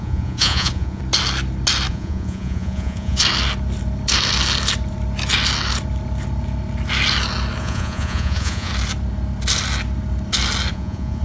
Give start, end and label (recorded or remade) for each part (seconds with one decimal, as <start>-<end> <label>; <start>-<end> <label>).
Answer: 0.0-1.0 remade; 1.0-1.9 recorded; 1.9-3.2 remade; 3.2-7.6 recorded; 7.6-8.7 remade; 8.7-10.7 recorded; 10.7-11.2 remade